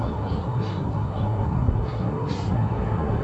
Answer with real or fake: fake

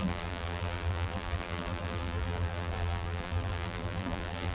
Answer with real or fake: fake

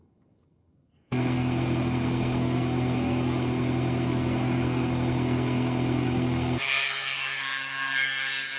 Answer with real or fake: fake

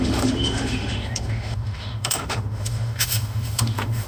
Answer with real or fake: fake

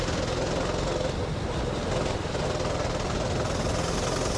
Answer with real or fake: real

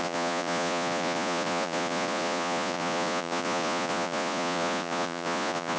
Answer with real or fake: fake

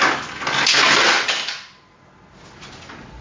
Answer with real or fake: real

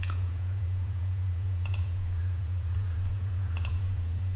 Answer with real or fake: fake